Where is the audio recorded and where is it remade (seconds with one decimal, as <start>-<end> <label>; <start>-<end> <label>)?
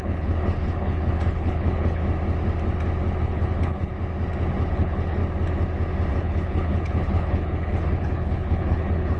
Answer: 0.0-2.0 remade; 2.0-3.2 recorded; 3.2-3.9 remade; 3.9-4.7 recorded; 4.7-5.2 remade; 5.2-6.1 recorded; 6.1-9.2 remade